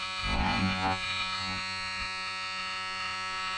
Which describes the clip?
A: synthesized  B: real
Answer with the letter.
A